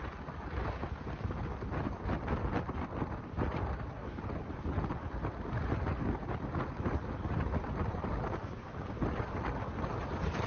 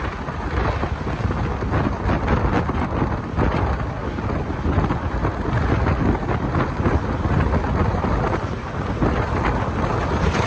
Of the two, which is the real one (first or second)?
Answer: second